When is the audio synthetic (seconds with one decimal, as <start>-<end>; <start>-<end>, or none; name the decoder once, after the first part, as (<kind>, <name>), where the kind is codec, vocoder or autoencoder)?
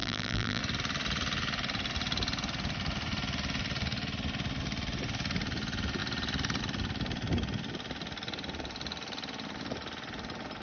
0.0-0.6 (vocoder, BigVGAN v2)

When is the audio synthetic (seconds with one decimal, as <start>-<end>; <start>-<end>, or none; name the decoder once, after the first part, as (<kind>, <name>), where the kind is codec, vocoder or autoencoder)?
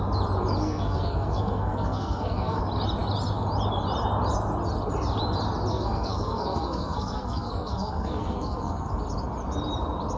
0.6-2.6 (codec, SNAC); 5.7-8.9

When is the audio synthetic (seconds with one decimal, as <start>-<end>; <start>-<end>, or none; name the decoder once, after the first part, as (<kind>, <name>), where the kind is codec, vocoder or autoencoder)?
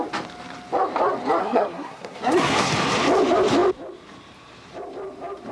1.4-2.7 (codec, SNAC)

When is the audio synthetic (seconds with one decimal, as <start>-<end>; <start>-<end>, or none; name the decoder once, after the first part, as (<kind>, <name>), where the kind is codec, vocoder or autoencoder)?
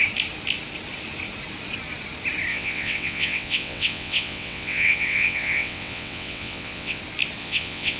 2.5-7.0 (vocoder, WaveNeXt); 7.4-8.0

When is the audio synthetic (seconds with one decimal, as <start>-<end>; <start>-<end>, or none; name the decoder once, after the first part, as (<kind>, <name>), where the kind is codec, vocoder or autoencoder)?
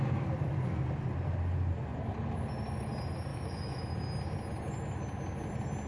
3.3-3.9 (autoencoder, DAC-VAE)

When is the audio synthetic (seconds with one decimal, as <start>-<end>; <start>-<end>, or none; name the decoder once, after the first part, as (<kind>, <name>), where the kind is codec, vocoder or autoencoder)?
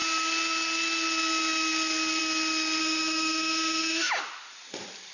2.8-4.2 (autoencoder, DAC-VAE)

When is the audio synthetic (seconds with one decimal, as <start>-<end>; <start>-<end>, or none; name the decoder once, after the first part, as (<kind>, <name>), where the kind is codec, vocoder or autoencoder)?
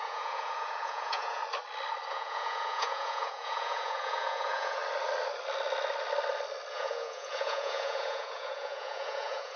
0.0-1.4 (vocoder, Vocos); 2.1-4.8; 6.7-9.6